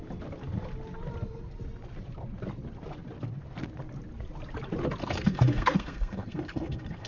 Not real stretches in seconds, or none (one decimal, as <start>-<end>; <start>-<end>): 5.0-7.1